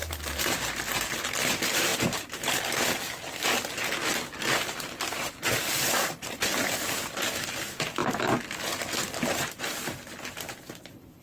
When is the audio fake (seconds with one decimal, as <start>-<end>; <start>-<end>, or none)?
0.0-0.9